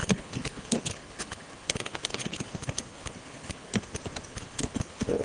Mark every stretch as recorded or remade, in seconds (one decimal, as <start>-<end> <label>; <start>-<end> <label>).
0.0-3.7 remade; 3.7-4.3 recorded; 4.3-5.2 remade

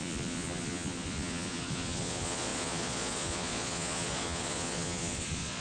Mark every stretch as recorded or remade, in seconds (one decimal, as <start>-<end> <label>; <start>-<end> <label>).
0.0-5.6 remade

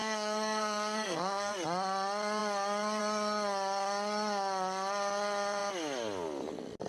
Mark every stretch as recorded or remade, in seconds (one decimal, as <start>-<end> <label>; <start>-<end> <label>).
0.0-1.5 remade; 1.5-6.9 recorded

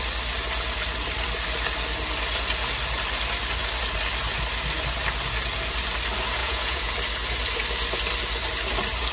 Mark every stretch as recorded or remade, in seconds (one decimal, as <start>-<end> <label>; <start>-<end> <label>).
0.0-6.4 recorded; 6.4-6.9 remade; 6.9-9.1 recorded